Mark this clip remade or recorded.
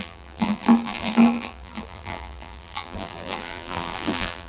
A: remade